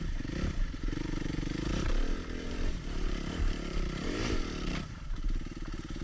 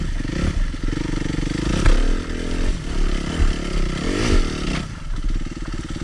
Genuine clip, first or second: second